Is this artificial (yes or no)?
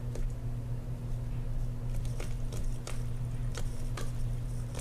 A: no